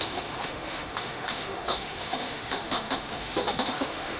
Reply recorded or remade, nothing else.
remade